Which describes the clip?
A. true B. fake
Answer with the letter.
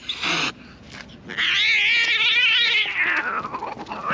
A